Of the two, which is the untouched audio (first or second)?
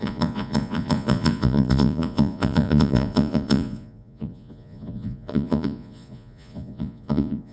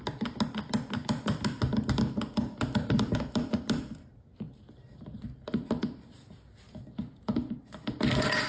second